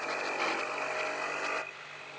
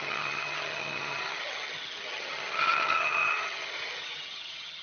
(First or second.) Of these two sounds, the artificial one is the second